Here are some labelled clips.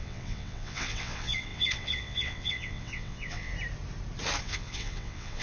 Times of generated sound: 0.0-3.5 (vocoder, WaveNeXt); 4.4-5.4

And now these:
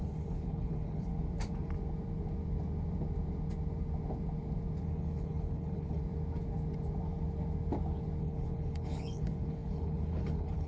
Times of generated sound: 0.0-1.1 (codec, HILCodec); 4.8-6.0; 8.2-10.7

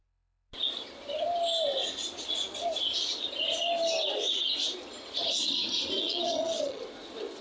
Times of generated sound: 6.0-6.8 (vocoder, HiFi-GAN)

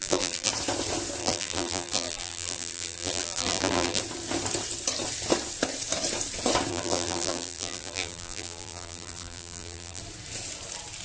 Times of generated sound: 0.0-0.5 (vocoder, BigVGAN v2); 1.2-4.0; 6.7-10.0

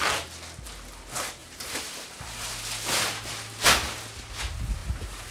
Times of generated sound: 1.4-2.5 (vocoder, BigVGAN v2); 4.8-5.3

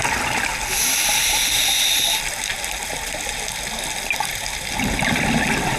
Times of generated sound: none